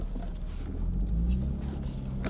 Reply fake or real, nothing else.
real